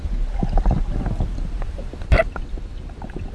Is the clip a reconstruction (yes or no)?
no